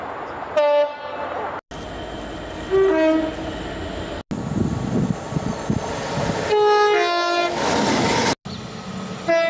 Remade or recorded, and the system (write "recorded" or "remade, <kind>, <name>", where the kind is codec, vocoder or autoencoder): recorded